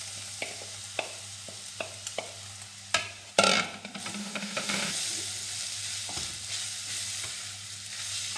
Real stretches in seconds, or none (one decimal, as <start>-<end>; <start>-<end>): 0.0-4.2; 4.9-8.4